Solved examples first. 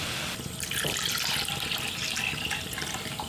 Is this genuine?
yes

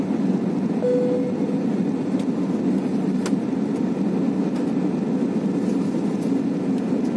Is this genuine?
yes